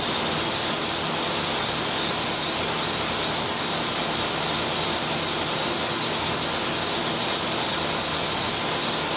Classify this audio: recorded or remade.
recorded